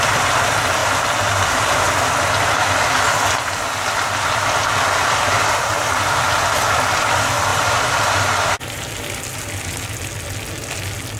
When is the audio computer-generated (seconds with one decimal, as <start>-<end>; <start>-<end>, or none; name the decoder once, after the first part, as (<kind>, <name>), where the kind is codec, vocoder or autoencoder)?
0.8-1.8 (vocoder, BigVGAN v2); 7.5-8.9